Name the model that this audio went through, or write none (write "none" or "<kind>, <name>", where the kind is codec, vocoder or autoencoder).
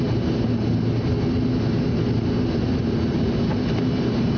none